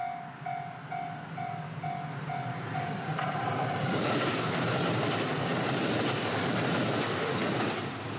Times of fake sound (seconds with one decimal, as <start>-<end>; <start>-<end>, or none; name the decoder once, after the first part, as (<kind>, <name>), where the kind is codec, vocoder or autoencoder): none